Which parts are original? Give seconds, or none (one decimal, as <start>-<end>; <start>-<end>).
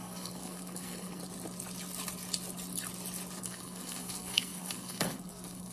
1.2-3.4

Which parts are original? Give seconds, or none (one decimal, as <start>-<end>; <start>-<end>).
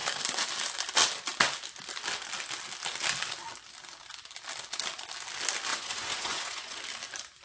0.0-5.7; 6.8-7.4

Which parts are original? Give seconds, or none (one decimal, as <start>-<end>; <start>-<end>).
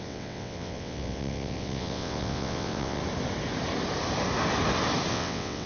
3.0-5.1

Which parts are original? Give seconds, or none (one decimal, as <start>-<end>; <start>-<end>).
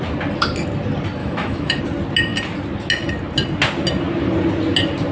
0.0-1.2; 1.8-5.1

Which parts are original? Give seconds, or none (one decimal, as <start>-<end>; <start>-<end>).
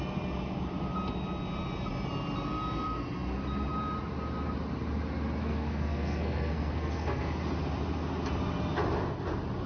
0.0-5.4; 7.3-9.7